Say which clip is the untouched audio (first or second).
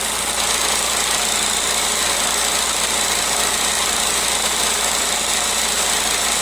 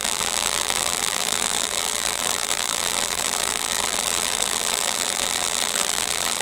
first